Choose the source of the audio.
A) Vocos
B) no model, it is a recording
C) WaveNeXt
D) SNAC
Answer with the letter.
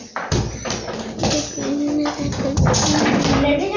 B